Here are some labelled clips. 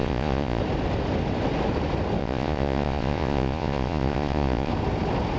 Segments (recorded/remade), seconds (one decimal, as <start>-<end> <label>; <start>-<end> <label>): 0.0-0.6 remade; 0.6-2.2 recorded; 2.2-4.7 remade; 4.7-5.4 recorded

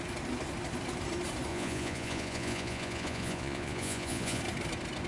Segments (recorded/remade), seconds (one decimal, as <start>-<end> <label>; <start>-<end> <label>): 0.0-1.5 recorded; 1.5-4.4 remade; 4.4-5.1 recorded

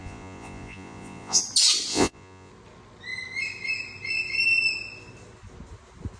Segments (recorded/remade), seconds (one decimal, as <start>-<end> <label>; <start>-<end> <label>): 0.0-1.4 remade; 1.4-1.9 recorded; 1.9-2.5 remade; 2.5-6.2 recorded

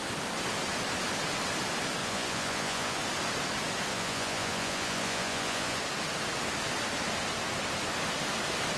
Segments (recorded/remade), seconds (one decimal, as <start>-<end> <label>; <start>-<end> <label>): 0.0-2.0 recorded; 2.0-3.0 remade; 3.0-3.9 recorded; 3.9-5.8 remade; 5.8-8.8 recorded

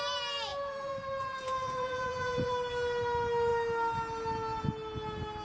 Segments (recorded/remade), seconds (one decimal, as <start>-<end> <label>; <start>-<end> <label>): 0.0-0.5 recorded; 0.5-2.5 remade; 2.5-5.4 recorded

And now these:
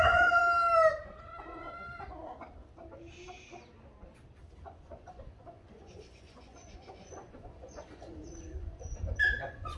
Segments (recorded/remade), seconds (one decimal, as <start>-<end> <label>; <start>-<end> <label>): 0.0-0.4 remade; 0.4-4.6 recorded; 4.6-9.8 remade

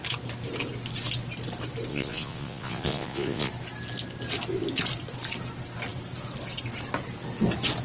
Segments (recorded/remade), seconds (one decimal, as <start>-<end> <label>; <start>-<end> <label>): 0.0-1.9 recorded; 1.9-3.5 remade; 3.5-7.8 recorded